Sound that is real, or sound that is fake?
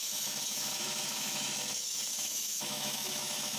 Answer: fake